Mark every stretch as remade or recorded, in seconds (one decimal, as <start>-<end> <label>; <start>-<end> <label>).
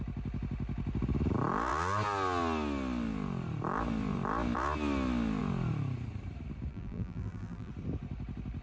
0.0-6.7 recorded; 6.7-7.7 remade; 7.7-8.6 recorded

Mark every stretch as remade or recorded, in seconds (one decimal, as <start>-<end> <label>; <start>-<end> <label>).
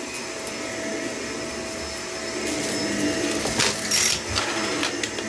0.0-5.3 recorded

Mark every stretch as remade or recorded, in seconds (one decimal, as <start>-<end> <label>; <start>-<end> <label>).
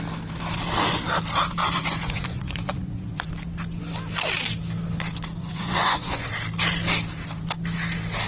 0.0-1.6 recorded; 1.6-3.3 remade; 3.3-5.4 recorded; 5.4-6.3 remade; 6.3-8.3 recorded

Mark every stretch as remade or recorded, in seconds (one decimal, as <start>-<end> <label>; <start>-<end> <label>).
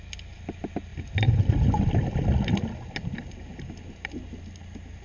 0.0-5.0 recorded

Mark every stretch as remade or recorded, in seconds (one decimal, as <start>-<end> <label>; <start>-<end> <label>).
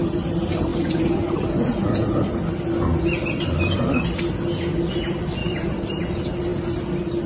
0.0-5.4 recorded; 5.4-6.0 remade; 6.0-7.3 recorded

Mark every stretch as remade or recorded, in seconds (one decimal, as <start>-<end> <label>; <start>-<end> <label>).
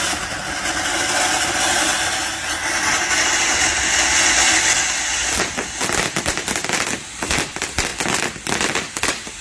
0.0-9.4 recorded